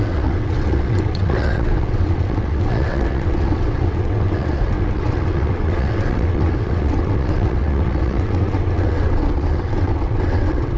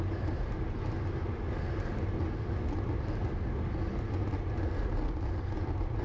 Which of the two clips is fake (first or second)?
first